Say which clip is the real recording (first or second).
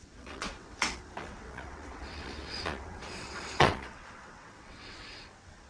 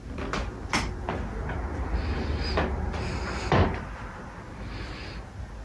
second